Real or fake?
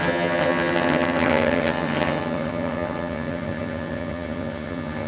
fake